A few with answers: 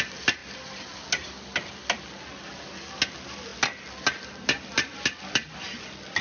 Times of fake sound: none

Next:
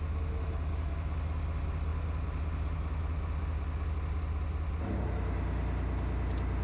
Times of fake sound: none

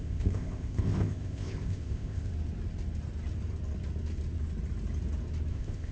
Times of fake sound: 0.0-2.3; 5.5-5.9

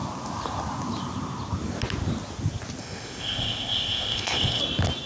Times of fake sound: 2.8-4.6